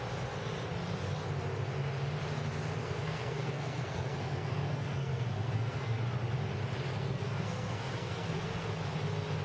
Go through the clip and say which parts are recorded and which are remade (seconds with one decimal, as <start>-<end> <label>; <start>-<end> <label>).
0.0-2.8 recorded; 2.8-6.0 remade; 6.0-6.9 recorded; 6.9-8.8 remade; 8.8-9.4 recorded